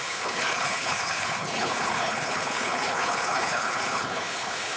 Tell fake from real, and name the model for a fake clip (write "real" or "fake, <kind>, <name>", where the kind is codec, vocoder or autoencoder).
fake, codec, HILCodec